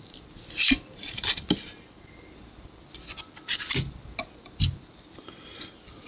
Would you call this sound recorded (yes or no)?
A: yes